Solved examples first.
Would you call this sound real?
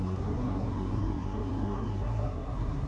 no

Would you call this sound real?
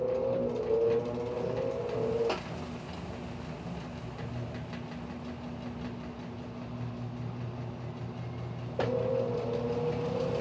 yes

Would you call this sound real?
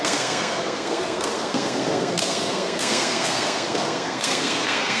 no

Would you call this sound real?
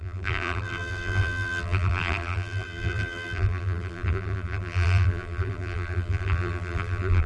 no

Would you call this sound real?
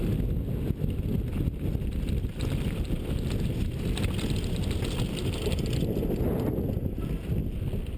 yes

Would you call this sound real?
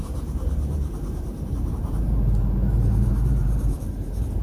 no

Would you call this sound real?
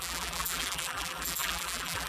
no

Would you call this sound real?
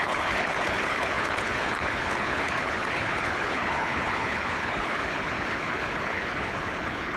no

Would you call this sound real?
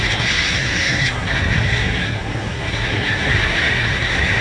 no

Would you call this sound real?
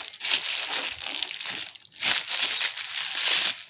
yes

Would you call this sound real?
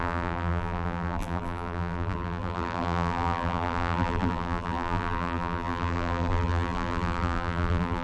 no